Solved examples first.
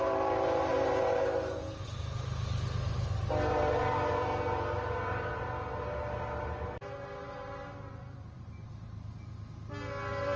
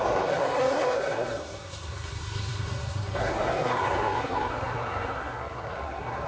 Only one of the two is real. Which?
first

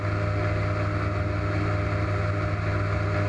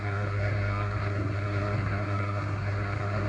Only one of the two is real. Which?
first